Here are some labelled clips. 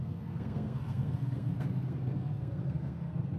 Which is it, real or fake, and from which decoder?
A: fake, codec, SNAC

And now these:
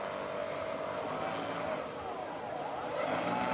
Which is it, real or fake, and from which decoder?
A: real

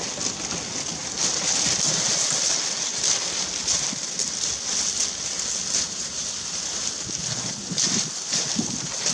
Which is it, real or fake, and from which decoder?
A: real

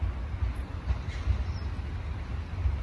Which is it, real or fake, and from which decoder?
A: real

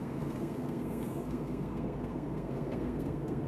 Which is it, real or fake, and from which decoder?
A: fake, codec, SNAC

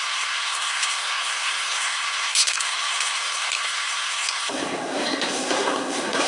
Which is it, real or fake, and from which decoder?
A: fake, codec, SNAC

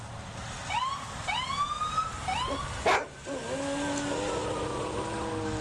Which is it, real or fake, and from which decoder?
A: real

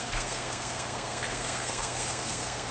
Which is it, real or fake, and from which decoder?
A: fake, codec, SNAC